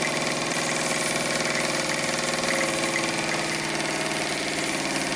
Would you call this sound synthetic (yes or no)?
no